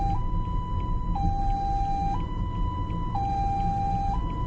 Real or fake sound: real